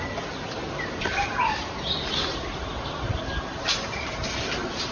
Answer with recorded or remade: recorded